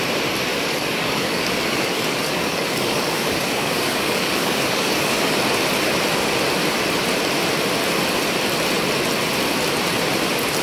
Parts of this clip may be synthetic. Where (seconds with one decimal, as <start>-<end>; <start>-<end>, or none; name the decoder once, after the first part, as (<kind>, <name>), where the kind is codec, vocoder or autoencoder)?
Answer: 0.5-5.4 (codec, DAC)